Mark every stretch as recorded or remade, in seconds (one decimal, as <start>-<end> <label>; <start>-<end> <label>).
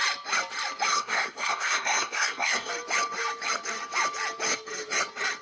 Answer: 0.0-0.9 recorded; 0.9-2.7 remade; 2.7-5.4 recorded